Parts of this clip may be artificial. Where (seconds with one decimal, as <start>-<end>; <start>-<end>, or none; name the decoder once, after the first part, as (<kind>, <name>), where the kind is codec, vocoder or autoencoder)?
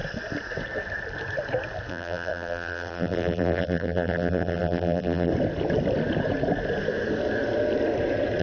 1.9-5.3 (vocoder, BigVGAN v2)